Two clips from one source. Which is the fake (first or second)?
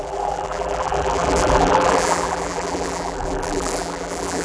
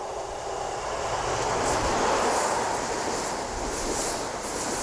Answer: first